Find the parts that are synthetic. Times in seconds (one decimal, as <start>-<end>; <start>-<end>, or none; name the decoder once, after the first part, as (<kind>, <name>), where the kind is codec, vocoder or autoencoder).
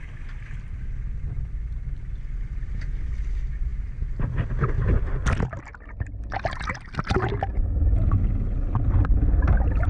none